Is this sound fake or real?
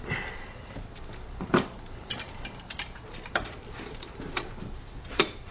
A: fake